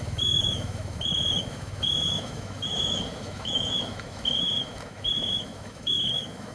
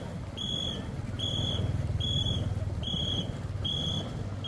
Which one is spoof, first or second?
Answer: first